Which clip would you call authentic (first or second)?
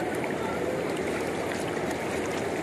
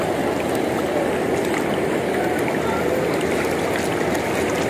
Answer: second